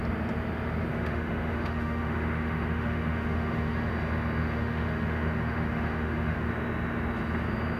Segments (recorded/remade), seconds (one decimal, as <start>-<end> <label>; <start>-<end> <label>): 0.0-0.9 recorded; 0.9-3.9 remade; 3.9-4.4 recorded; 4.4-6.5 remade; 6.5-7.8 recorded